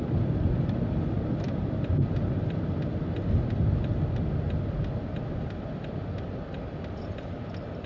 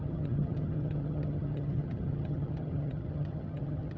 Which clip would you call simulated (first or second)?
second